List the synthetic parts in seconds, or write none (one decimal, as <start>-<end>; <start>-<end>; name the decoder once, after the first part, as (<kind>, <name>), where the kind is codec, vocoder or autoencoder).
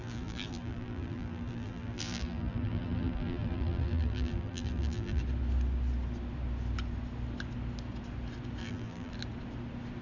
0.0-5.2 (vocoder, BigVGAN v2); 8.6-9.1